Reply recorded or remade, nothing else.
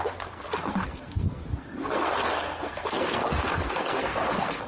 remade